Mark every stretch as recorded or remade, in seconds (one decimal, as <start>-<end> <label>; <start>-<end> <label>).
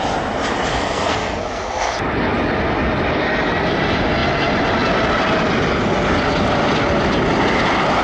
0.0-0.7 recorded; 0.7-2.0 remade; 2.0-8.0 recorded